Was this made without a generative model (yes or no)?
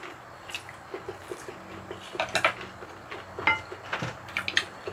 yes